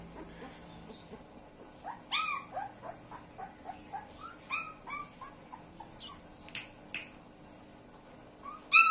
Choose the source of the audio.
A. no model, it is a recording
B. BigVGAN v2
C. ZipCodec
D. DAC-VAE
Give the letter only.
A